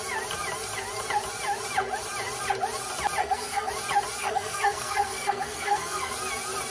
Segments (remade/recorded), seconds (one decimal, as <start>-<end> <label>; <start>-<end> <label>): 0.0-3.2 recorded; 3.2-3.7 remade; 3.7-4.2 recorded; 4.2-6.1 remade; 6.1-6.7 recorded